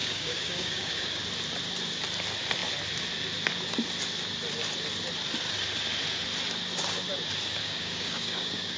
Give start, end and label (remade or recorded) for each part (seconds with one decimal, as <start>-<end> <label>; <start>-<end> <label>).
0.0-1.2 remade; 1.2-7.6 recorded; 7.6-8.8 remade